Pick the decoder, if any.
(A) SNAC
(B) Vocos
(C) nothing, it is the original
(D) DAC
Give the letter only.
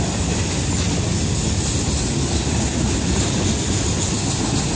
C